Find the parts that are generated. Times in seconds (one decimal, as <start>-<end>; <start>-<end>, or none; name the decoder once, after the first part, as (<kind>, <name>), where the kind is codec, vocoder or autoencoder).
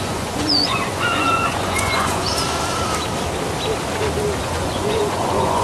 0.0-2.3 (vocoder, Vocos); 4.4-5.6